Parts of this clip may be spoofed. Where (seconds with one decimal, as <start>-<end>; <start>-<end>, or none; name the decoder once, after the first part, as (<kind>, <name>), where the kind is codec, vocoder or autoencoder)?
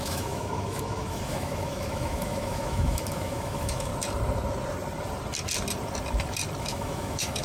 0.0-3.9 (autoencoder, DAC-VAE); 6.6-7.4